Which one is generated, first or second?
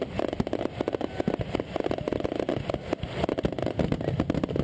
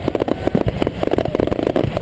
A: second